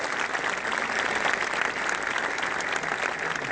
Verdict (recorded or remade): recorded